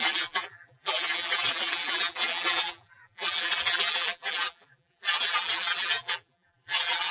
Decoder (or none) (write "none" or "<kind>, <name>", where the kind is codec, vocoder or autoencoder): vocoder, BigVGAN v2